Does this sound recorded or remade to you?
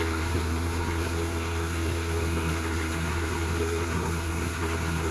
remade